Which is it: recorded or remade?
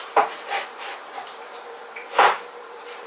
remade